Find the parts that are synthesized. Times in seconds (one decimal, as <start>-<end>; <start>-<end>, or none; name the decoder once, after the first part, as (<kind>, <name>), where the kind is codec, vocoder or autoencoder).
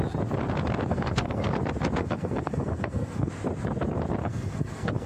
0.9-1.6 (codec, SNAC); 2.0-3.3; 4.2-5.1